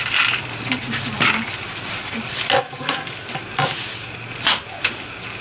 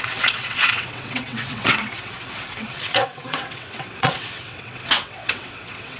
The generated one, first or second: second